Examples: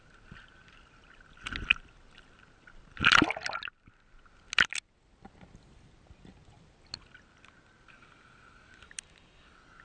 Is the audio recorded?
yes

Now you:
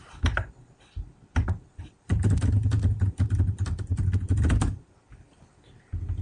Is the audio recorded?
yes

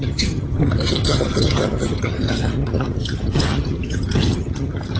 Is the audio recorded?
no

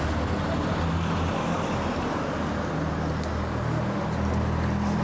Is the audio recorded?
yes